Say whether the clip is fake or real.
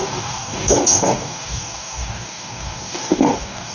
fake